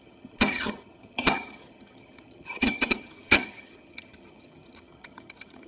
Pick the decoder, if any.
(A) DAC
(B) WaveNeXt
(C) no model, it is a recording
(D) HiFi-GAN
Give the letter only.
D